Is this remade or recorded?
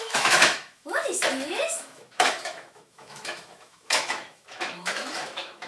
remade